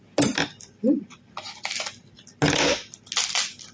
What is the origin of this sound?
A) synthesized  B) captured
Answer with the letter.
B